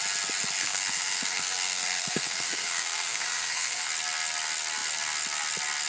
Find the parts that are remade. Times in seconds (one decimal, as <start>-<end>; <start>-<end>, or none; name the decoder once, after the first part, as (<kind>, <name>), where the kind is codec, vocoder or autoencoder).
0.6-3.9 (codec, SNAC)